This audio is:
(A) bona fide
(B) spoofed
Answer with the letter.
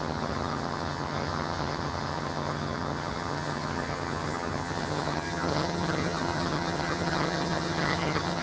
B